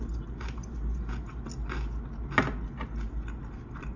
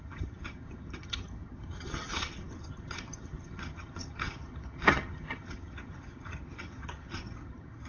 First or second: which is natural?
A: first